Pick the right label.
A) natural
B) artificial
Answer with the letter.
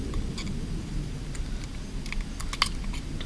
A